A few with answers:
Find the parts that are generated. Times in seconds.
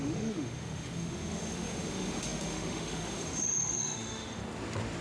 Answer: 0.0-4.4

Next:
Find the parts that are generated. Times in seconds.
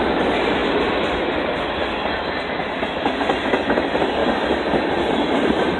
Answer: none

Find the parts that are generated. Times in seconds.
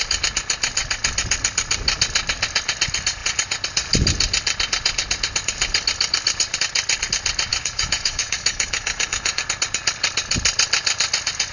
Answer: 7.5-9.4